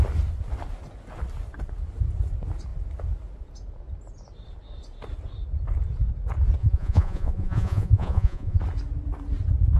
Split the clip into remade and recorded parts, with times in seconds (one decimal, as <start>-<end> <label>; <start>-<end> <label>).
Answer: 0.0-6.6 recorded; 6.6-8.6 remade; 8.6-9.8 recorded